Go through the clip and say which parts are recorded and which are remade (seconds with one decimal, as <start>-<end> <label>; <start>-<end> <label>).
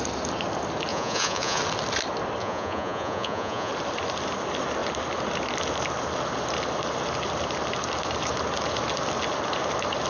0.0-0.9 recorded; 0.9-1.6 remade; 1.6-2.4 recorded; 2.4-3.7 remade; 3.7-10.1 recorded